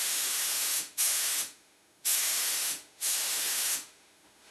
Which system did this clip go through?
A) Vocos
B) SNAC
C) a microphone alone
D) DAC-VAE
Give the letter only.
D